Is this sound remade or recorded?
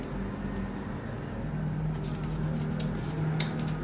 remade